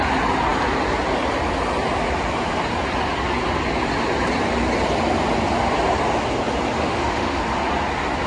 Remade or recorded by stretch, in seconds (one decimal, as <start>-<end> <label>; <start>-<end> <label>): 0.0-6.8 recorded; 6.8-7.4 remade; 7.4-8.3 recorded